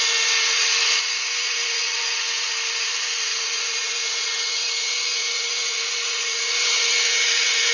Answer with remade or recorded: remade